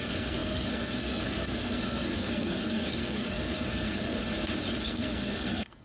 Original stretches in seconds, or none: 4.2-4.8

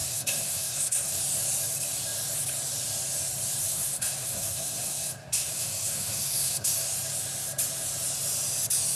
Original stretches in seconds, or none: 1.2-3.6; 6.7-9.0

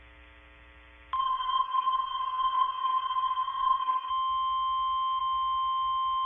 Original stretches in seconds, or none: 0.0-1.2; 4.1-6.3